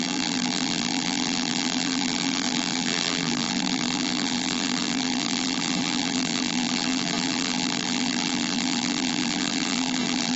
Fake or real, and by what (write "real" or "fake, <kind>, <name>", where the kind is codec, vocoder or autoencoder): fake, vocoder, BigVGAN v2